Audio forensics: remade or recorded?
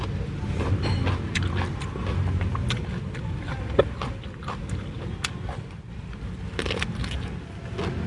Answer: recorded